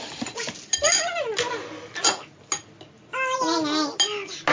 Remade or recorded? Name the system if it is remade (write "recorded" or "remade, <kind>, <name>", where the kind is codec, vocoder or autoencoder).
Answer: recorded